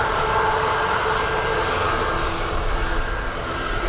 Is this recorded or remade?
recorded